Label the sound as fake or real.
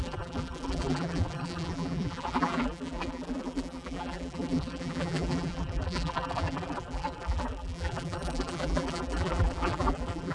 fake